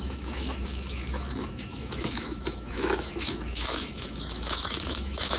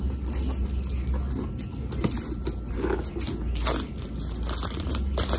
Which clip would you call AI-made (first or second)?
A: first